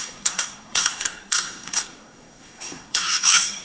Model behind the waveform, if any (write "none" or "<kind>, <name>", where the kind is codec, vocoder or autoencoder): codec, SNAC